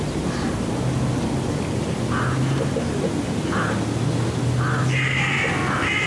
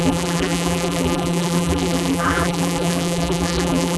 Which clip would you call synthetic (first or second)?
second